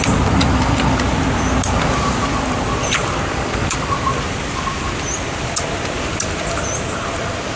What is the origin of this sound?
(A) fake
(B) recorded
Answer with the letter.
B